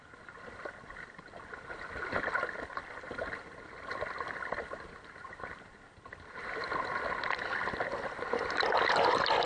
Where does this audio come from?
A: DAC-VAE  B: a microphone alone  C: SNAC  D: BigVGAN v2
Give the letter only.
D